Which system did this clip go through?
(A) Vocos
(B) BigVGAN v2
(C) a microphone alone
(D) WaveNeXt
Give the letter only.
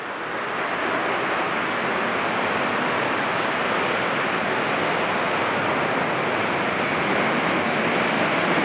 C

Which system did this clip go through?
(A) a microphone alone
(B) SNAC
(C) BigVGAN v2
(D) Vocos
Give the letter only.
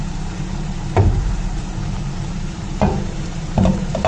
C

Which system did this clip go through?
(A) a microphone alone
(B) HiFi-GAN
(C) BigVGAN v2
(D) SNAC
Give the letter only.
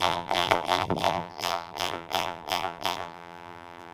C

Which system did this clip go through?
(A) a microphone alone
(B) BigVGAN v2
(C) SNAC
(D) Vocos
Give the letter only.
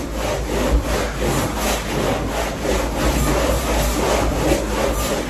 A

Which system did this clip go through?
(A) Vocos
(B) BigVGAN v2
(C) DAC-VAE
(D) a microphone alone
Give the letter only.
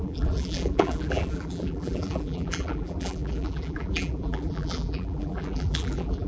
B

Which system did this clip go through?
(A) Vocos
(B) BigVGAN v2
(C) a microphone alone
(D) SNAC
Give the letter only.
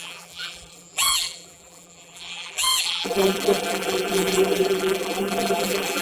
B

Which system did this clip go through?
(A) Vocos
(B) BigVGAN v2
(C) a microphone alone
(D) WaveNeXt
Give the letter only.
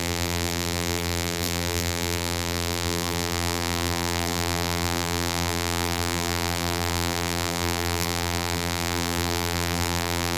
B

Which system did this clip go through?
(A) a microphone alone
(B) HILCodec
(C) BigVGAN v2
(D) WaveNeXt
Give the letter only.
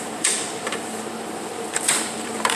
C